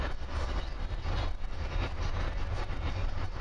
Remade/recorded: recorded